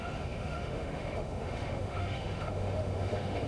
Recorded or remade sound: remade